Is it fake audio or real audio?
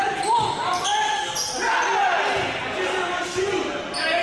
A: real